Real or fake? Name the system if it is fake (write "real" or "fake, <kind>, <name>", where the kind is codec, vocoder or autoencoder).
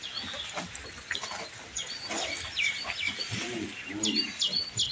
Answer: real